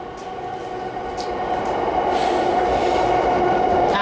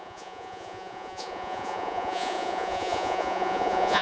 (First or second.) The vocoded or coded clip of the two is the second